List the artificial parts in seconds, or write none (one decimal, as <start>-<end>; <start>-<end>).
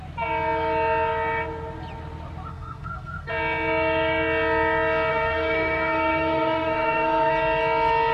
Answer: 2.5-3.3; 5.1-7.3